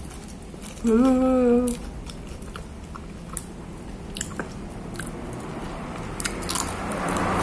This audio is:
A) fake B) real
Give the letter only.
B